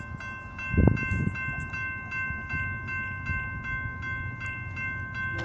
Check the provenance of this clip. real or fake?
real